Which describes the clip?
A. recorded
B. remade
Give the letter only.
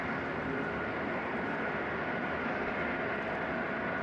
A